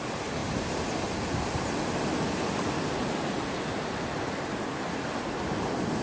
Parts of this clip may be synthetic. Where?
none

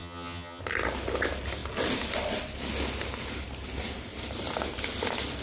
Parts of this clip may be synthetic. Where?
0.0-0.6

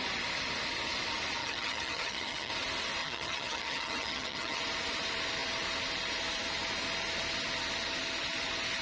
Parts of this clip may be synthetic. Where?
1.4-2.5; 3.0-4.6

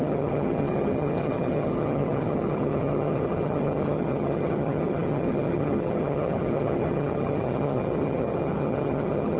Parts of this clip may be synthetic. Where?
0.0-9.4

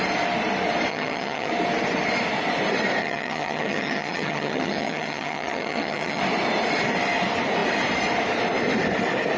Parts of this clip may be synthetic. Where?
0.9-1.5; 3.0-6.2

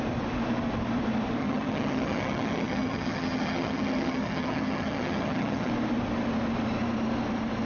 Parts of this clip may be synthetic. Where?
1.4-5.7

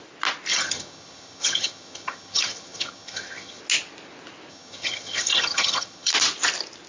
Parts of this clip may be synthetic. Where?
0.5-3.6; 4.5-6.1

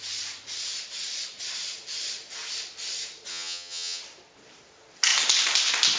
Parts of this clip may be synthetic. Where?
3.3-4.0